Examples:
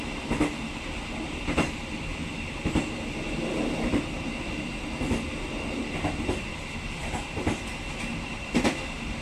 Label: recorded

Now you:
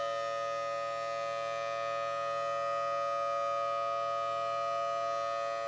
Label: recorded